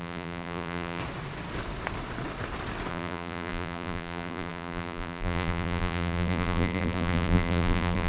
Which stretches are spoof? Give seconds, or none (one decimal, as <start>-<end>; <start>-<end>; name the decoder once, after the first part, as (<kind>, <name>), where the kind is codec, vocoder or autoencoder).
0.0-1.0 (vocoder, BigVGAN v2); 2.9-8.1